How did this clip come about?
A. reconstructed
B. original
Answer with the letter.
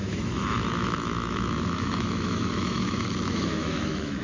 A